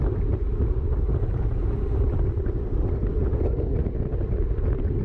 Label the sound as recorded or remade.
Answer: recorded